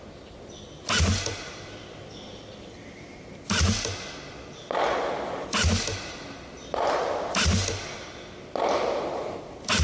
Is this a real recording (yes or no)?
yes